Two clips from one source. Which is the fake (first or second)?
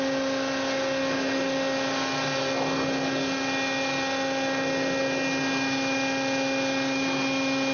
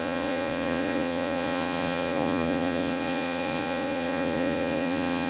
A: second